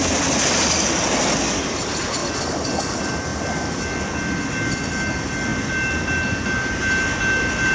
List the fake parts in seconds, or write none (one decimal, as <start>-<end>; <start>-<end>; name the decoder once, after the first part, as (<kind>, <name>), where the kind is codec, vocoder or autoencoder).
3.3-4.1 (vocoder, BigVGAN v2)